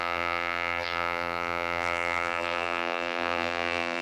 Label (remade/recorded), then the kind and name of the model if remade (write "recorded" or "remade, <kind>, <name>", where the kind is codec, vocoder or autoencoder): remade, vocoder, BigVGAN v2